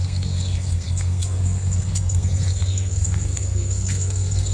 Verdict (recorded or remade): remade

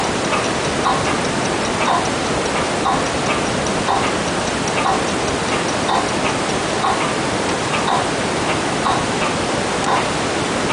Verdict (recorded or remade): remade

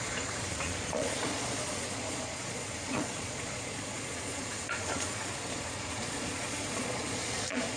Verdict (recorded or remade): remade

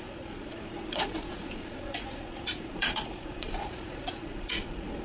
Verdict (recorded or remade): remade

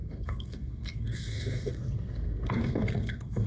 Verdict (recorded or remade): remade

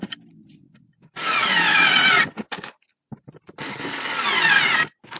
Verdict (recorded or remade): recorded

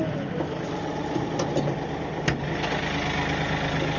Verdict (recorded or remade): recorded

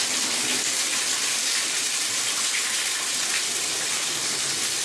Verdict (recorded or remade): recorded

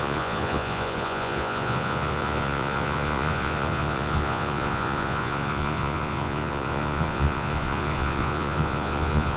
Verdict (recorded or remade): remade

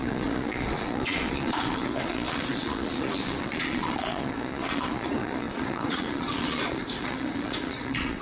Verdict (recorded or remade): remade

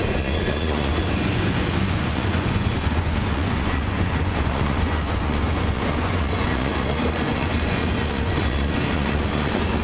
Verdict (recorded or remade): remade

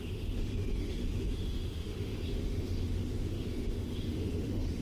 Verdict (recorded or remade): remade